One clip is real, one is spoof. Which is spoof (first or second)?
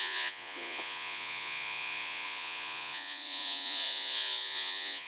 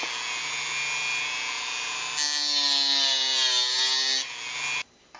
first